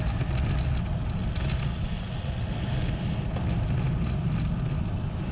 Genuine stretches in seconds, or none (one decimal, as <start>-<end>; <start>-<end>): 0.0-5.3